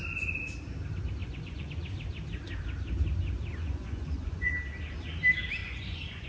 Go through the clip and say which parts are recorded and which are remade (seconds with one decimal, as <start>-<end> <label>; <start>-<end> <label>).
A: 0.0-1.2 recorded; 1.2-1.7 remade; 1.7-3.5 recorded; 3.5-4.5 remade; 4.5-5.6 recorded; 5.6-6.3 remade